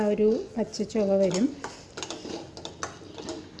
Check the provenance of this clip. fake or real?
real